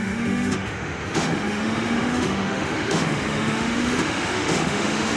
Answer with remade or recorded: remade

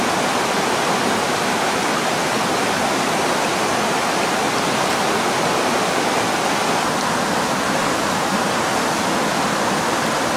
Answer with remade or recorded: recorded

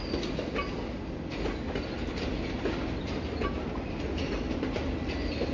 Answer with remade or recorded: recorded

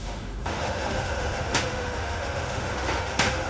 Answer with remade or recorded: remade